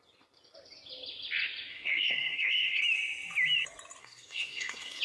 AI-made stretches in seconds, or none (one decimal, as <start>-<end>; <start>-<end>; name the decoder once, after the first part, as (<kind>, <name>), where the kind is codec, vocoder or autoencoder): 1.7-2.8 (codec, SNAC); 4.0-5.0